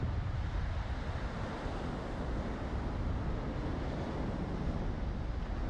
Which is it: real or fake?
real